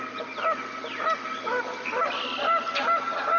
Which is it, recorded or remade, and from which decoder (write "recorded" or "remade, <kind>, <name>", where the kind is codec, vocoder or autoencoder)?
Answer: recorded